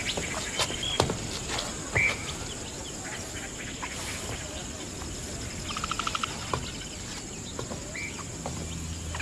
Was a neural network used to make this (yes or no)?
no